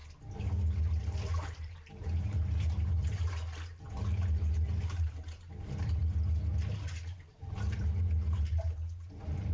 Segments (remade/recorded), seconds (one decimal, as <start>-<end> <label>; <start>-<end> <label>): 0.0-1.3 recorded; 1.3-6.0 remade; 6.0-7.1 recorded; 7.1-9.5 remade